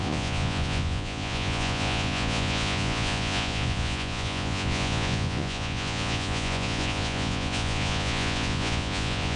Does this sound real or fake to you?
fake